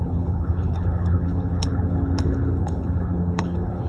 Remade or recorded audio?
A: remade